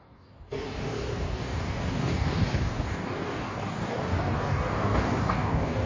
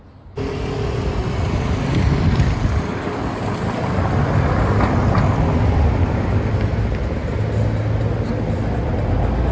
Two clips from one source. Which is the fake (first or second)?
first